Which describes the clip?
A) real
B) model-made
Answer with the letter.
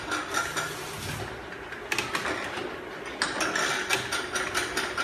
A